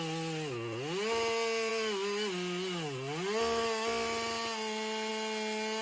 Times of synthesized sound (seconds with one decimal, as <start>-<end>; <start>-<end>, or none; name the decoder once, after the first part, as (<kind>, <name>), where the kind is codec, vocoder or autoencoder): none